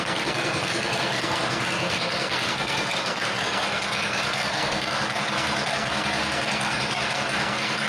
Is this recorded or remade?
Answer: remade